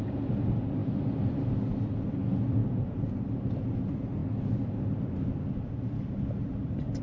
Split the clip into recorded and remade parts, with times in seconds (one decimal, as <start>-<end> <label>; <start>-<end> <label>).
0.0-7.0 recorded